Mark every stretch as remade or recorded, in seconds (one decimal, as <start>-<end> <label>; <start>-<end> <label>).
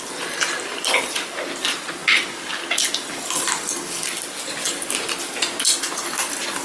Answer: 0.0-6.6 recorded